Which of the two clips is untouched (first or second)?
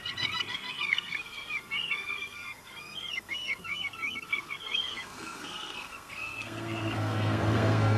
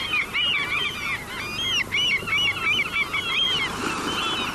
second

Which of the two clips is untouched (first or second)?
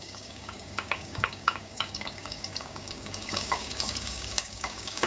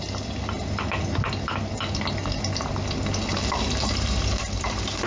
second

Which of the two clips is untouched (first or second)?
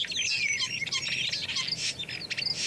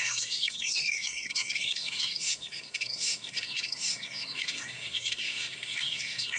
first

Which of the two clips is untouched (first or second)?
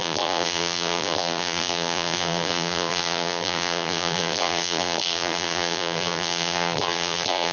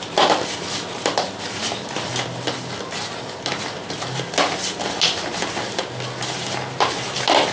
second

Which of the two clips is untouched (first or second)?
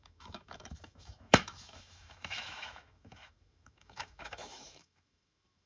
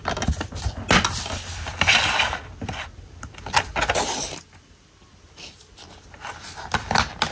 second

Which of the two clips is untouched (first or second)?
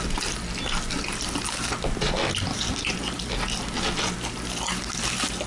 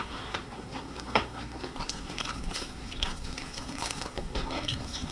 first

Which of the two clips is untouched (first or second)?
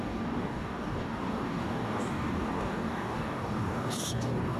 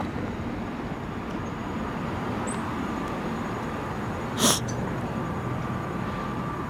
second